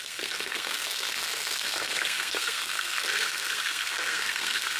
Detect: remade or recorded remade